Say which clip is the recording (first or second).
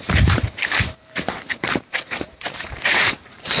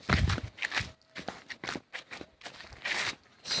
second